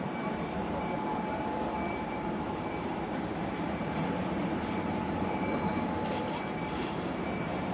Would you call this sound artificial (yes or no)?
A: yes